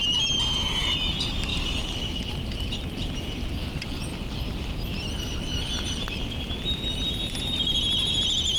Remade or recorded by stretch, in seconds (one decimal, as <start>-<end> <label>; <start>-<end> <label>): 0.0-1.5 recorded; 1.5-2.3 remade; 2.3-4.1 recorded; 4.1-6.1 remade; 6.1-8.6 recorded

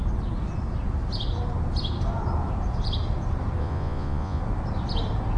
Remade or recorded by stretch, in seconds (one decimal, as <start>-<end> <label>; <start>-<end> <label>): 0.0-3.6 recorded; 3.6-4.4 remade; 4.4-5.4 recorded

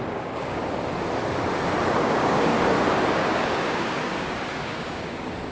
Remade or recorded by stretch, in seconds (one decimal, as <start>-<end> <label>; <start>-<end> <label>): 0.0-0.6 remade; 0.6-1.9 recorded; 1.9-2.5 remade; 2.5-3.1 recorded; 3.1-5.5 remade

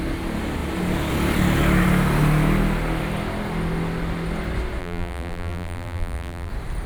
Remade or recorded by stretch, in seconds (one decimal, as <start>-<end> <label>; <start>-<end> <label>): 0.0-4.8 recorded; 4.8-6.5 remade; 6.5-6.9 recorded

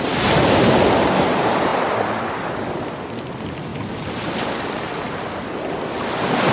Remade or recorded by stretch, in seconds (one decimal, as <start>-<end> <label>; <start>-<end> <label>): 0.0-3.7 recorded; 3.7-4.5 remade; 4.5-6.5 recorded

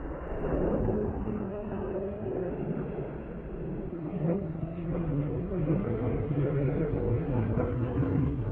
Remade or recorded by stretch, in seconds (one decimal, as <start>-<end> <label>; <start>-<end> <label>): 0.0-0.8 recorded; 0.8-2.5 remade; 2.5-3.9 recorded; 3.9-8.5 remade

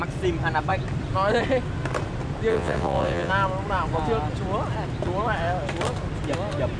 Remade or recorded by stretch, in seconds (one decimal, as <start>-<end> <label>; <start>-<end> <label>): 0.0-2.5 recorded; 2.5-3.3 remade; 3.3-6.8 recorded